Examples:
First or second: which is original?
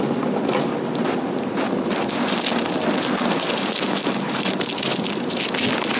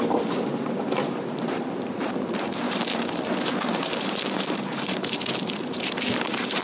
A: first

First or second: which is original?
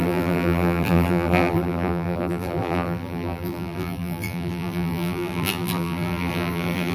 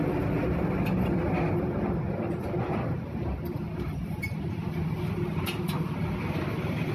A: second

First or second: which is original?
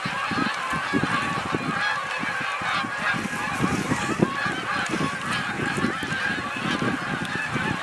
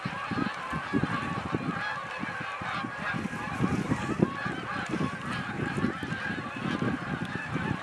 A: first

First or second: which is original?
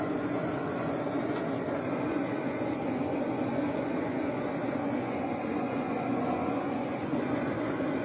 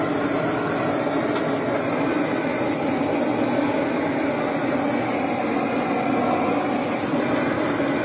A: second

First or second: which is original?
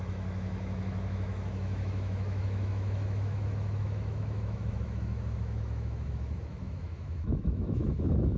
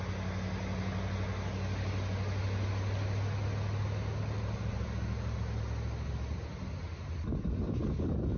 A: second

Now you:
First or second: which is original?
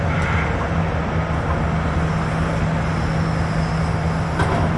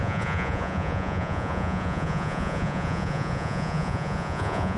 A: first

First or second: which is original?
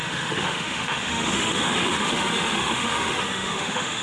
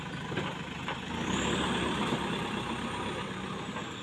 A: second